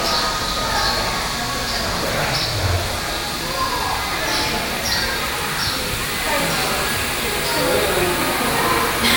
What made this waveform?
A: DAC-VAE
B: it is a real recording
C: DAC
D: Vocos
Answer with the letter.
B